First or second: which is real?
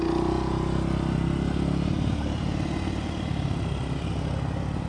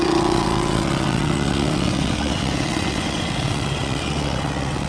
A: first